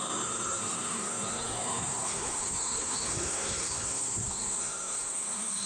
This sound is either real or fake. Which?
fake